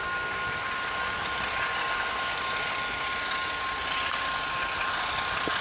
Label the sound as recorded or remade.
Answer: recorded